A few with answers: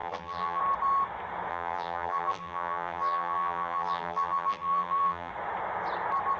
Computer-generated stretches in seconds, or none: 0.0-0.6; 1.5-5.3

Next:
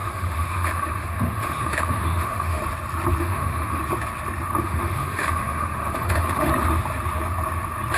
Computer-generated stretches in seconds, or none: 0.0-2.6; 3.2-3.8; 4.6-6.5

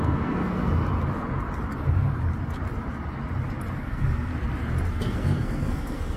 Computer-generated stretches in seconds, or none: 0.0-0.7; 3.8-4.3; 4.9-6.2

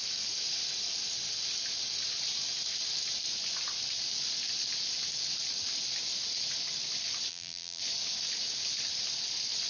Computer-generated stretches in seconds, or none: 7.3-7.8